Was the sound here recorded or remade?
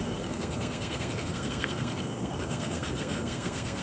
remade